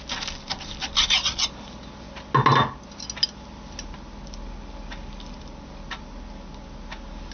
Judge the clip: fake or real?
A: real